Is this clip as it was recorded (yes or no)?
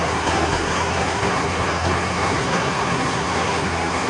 no